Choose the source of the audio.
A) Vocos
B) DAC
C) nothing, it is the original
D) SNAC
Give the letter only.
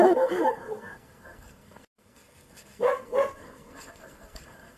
D